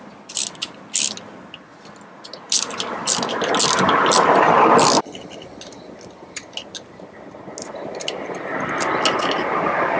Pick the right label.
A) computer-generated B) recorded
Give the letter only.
B